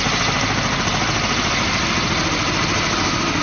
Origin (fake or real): real